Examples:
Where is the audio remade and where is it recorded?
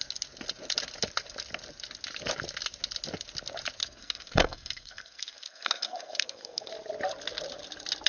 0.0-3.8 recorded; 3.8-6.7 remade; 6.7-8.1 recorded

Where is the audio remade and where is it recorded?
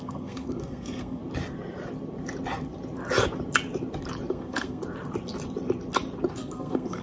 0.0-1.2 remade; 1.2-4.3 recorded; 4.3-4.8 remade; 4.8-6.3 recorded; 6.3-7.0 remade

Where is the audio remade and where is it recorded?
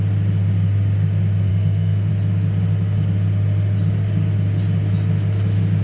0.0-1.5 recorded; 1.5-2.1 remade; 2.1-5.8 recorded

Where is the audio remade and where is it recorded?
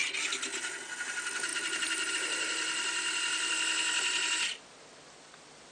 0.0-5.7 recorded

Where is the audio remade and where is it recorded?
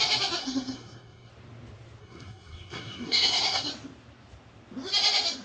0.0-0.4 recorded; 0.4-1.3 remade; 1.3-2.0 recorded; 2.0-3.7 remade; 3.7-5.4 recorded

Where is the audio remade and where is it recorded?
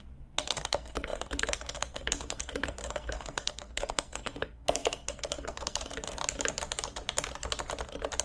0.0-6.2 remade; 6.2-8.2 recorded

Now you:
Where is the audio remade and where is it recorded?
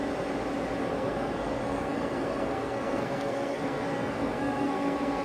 0.0-0.9 recorded; 0.9-5.2 remade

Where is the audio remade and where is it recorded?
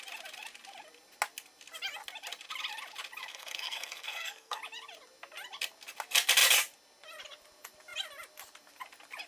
0.0-3.3 recorded; 3.3-4.6 remade; 4.6-9.3 recorded